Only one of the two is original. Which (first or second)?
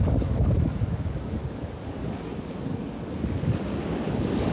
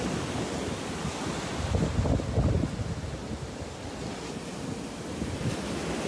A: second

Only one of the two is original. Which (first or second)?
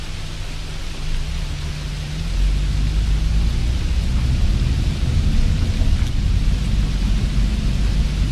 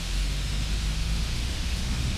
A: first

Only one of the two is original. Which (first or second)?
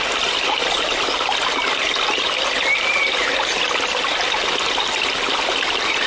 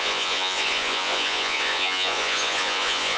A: first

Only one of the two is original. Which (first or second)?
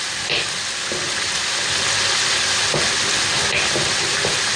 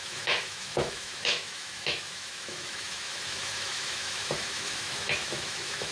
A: first